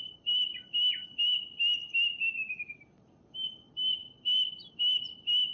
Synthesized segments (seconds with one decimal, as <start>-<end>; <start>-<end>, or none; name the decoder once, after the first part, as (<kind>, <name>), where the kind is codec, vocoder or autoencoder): none